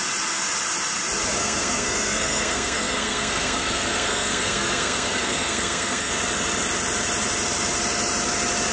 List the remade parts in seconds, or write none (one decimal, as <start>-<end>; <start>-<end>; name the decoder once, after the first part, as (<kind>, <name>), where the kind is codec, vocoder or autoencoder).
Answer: 1.4-6.1 (codec, SNAC)